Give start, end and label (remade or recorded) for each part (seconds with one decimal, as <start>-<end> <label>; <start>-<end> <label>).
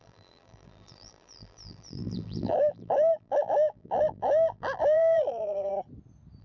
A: 0.0-5.7 remade; 5.7-6.4 recorded